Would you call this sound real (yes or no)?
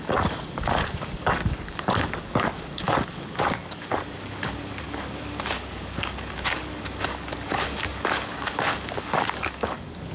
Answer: no